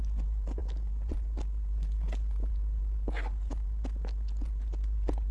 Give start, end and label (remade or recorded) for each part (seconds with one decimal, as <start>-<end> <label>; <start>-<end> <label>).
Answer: 0.0-5.3 recorded